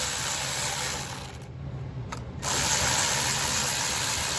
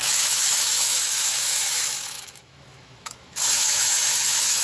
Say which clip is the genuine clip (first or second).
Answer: first